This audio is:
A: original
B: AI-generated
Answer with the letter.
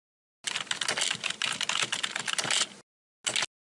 A